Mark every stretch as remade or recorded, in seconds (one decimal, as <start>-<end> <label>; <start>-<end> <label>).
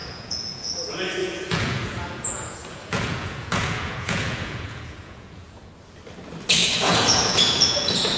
0.0-0.7 remade; 0.7-1.2 recorded; 1.2-5.7 remade; 5.7-6.6 recorded; 6.6-8.2 remade